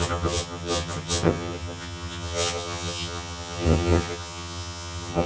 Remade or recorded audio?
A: remade